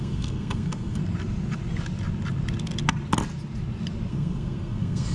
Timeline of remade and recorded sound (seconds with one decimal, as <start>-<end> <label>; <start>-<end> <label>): 0.0-1.0 remade; 1.0-4.1 recorded; 4.1-5.1 remade